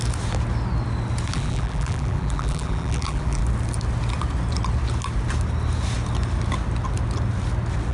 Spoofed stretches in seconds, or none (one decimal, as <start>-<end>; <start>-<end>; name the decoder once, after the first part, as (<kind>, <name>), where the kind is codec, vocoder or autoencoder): 1.3-3.4 (vocoder, BigVGAN v2)